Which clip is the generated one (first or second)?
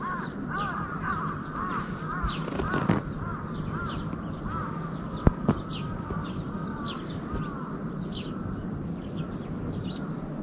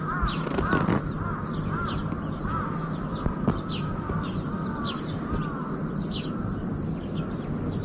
first